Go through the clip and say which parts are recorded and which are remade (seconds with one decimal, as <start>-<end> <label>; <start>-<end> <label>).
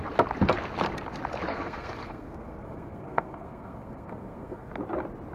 0.0-1.5 recorded; 1.5-4.7 remade; 4.7-5.3 recorded